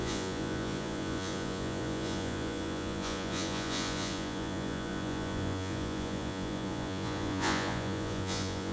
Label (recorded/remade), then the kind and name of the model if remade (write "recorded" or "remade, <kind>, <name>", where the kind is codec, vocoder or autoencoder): remade, vocoder, Vocos